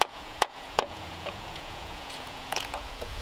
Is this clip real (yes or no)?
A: no